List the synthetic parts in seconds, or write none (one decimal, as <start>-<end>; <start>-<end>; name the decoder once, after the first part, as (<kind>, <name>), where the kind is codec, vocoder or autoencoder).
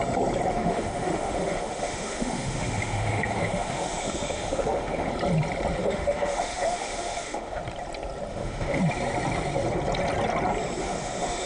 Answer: 0.5-5.1 (autoencoder, DAC-VAE); 5.8-7.6; 8.3-8.8; 10.8-11.5